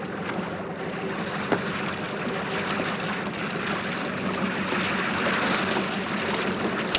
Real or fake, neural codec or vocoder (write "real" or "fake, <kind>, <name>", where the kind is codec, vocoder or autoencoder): real